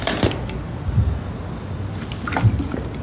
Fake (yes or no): no